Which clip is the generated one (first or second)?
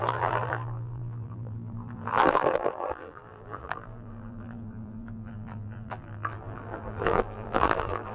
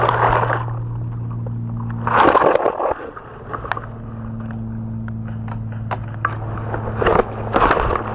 first